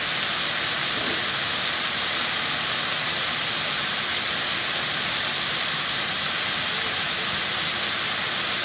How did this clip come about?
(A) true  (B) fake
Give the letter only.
A